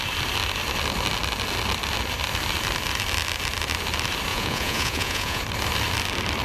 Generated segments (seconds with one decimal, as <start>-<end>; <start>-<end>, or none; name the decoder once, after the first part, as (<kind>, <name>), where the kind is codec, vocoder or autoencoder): 4.3-5.4 (vocoder, Vocos)